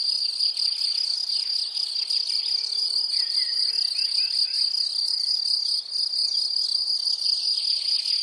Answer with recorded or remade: recorded